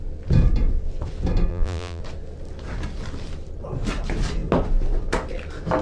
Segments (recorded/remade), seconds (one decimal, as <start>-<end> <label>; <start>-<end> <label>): 0.0-1.5 recorded; 1.5-2.0 remade; 2.0-5.8 recorded